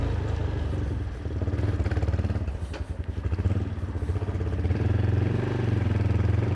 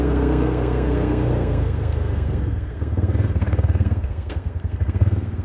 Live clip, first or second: first